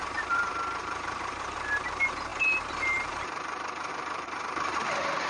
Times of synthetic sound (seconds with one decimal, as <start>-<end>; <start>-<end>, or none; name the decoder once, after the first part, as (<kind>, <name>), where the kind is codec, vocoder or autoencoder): 0.0-5.3 (vocoder, BigVGAN v2)